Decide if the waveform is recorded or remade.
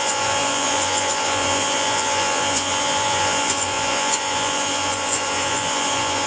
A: remade